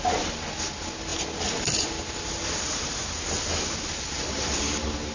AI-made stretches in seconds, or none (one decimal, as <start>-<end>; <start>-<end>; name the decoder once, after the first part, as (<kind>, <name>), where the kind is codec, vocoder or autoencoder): none